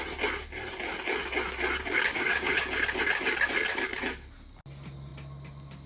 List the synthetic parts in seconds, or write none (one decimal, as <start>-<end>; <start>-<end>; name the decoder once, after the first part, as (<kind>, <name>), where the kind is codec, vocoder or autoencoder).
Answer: 2.1-2.6 (codec, DAC)